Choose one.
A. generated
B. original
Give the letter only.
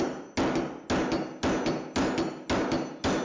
B